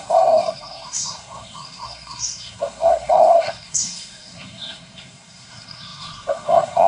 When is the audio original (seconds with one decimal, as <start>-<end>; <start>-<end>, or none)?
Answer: none